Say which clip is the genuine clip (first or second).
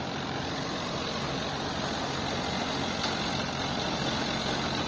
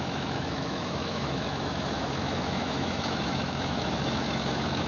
first